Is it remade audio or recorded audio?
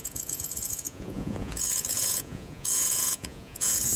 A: remade